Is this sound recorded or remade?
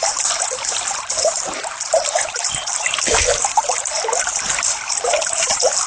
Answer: remade